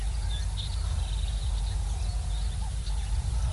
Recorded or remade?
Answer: recorded